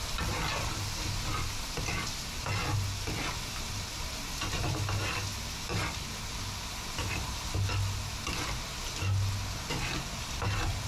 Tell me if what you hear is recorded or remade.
recorded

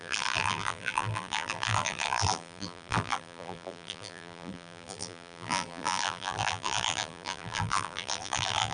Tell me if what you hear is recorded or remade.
remade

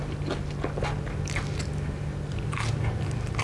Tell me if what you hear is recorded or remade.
recorded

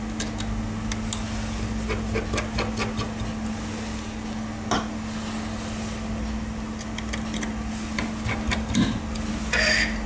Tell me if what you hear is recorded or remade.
recorded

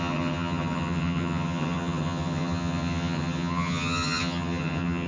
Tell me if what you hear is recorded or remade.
remade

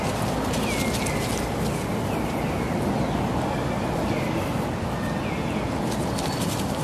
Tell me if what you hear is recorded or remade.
recorded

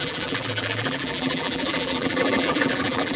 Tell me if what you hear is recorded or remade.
remade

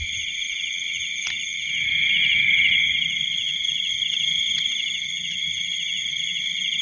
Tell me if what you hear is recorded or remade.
remade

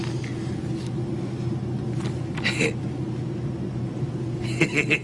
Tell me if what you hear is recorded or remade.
recorded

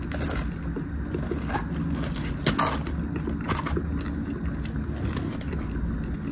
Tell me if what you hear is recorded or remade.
recorded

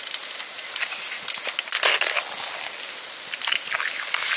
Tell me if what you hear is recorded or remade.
recorded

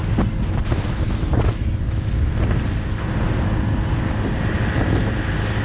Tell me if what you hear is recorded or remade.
recorded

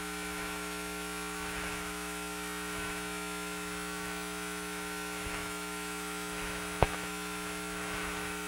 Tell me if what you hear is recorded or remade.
remade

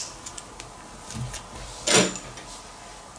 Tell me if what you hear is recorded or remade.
recorded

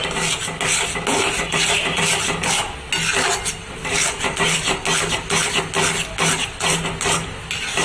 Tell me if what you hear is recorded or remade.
recorded